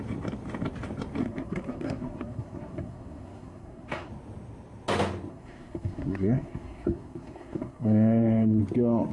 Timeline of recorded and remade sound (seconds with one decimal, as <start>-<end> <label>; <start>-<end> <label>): 0.0-1.2 recorded; 1.2-4.1 remade; 4.1-5.3 recorded; 5.3-8.6 remade; 8.6-9.1 recorded